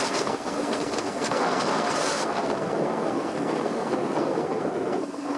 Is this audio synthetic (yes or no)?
yes